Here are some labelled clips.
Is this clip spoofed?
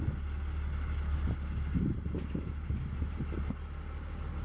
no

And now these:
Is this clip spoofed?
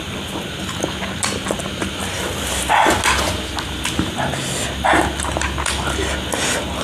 no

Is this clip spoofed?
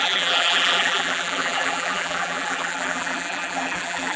yes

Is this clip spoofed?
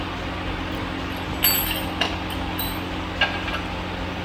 no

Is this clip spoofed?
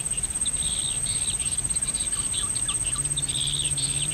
no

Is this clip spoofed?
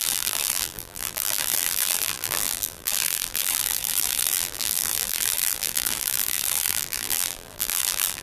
yes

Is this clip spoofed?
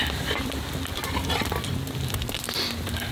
yes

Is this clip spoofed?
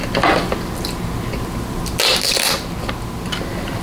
no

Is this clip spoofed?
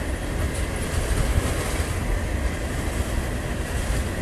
no